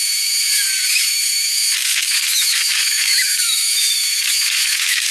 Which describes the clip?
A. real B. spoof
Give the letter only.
B